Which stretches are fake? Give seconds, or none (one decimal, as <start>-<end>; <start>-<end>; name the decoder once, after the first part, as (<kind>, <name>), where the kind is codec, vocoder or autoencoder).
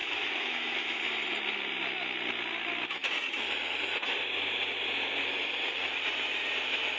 0.0-1.0 (autoencoder, DAC-VAE)